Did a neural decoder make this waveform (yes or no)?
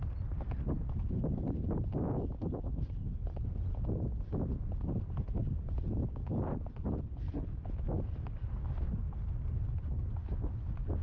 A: no